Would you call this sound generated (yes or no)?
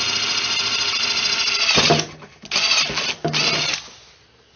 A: no